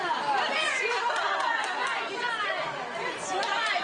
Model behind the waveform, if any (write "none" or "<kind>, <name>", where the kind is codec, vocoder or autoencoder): none